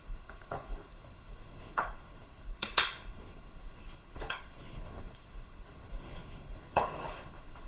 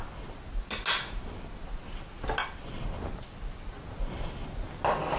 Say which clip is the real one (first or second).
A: second